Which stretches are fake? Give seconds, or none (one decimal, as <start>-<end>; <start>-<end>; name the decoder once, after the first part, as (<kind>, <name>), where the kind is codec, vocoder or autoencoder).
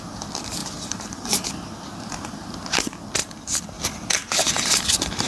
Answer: 0.6-1.5 (vocoder, BigVGAN v2); 3.2-3.8; 4.2-5.3